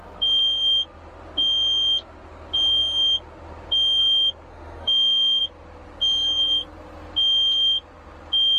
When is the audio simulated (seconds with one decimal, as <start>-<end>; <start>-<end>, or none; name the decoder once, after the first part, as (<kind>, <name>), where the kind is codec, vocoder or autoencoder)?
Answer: 4.5-5.4 (autoencoder, DAC-VAE)